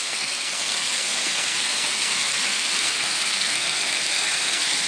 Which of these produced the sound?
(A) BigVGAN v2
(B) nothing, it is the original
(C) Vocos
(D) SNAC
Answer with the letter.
D